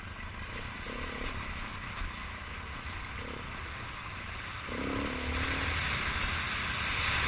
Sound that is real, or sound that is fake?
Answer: real